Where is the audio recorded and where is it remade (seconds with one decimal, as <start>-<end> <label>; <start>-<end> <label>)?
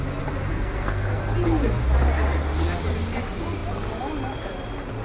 0.0-0.5 recorded; 0.5-1.2 remade; 1.2-5.0 recorded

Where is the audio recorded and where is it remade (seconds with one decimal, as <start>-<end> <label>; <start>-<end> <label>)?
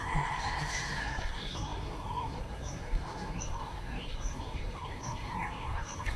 0.0-6.2 remade